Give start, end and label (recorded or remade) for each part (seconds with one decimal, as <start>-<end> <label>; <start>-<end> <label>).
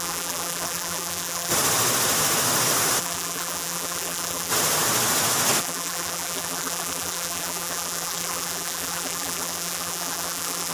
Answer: 0.0-1.5 remade; 1.5-3.0 recorded; 3.0-4.5 remade; 4.5-5.6 recorded; 5.6-10.7 remade